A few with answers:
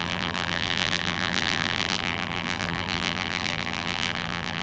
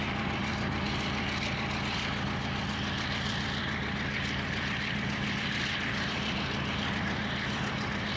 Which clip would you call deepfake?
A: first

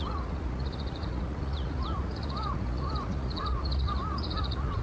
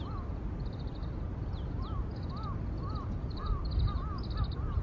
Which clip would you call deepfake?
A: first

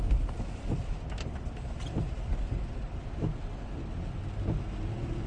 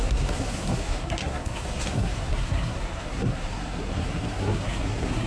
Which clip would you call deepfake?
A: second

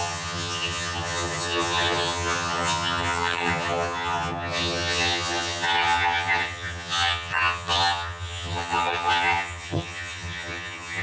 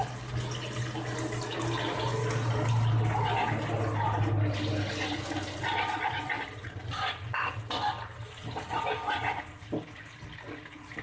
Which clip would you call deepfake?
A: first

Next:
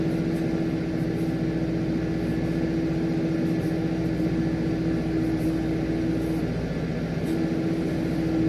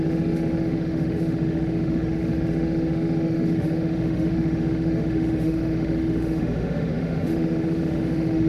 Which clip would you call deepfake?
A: second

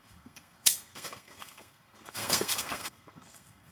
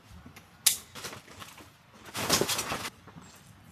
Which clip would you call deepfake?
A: first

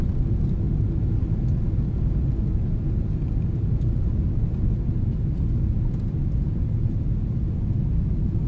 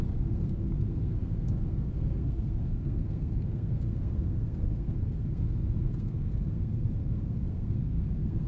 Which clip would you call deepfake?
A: second